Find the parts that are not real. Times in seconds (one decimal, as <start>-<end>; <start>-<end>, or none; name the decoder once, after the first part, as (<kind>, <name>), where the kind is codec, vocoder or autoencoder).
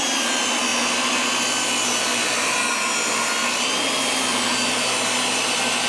2.1-2.7 (vocoder, BigVGAN v2)